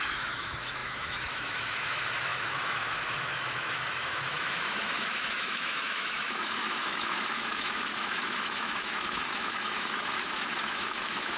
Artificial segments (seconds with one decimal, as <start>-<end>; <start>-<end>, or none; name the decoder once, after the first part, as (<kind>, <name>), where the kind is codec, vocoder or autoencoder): 0.0-11.4 (autoencoder, DAC-VAE)